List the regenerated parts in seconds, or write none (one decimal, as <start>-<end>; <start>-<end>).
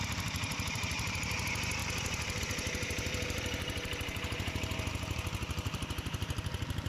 none